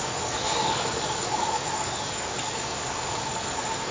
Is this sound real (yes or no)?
no